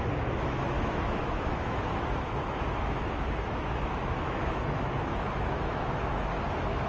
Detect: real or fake fake